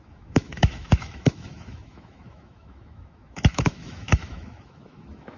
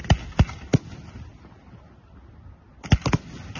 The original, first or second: second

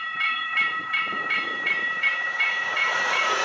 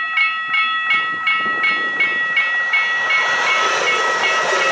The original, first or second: second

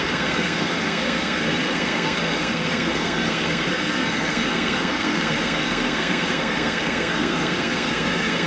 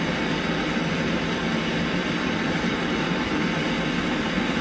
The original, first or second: second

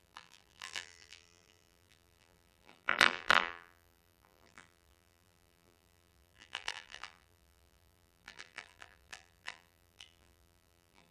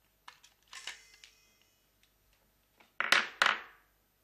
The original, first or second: second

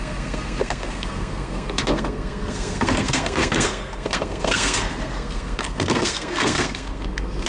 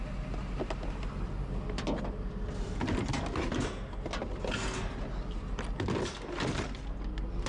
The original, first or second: second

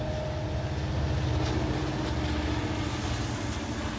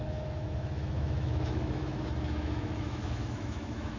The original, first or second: first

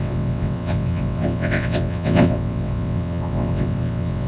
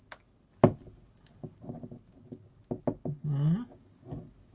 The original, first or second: second